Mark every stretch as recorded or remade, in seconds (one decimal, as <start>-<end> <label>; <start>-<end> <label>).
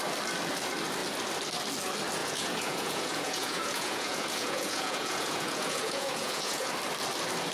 0.0-2.2 recorded; 2.2-6.7 remade; 6.7-7.5 recorded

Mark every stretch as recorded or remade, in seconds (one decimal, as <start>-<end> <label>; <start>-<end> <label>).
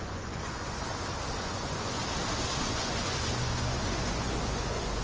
0.0-0.9 remade; 0.9-1.4 recorded; 1.4-2.0 remade; 2.0-2.6 recorded; 2.6-5.0 remade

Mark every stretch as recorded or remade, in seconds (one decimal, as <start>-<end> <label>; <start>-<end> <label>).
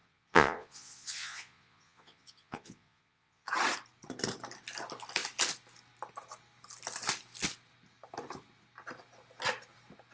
0.0-3.5 remade; 3.5-10.1 recorded